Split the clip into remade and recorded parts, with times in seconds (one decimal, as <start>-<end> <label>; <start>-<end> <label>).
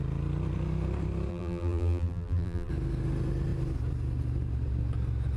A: 0.0-1.3 recorded; 1.3-2.7 remade; 2.7-5.4 recorded